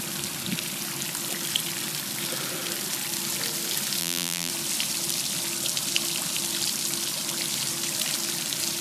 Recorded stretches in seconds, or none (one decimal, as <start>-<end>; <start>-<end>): 0.0-4.0; 4.5-8.8